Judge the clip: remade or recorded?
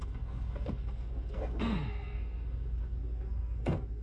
remade